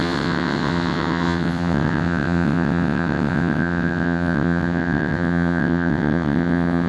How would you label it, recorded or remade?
remade